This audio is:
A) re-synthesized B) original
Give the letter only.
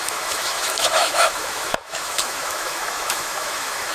A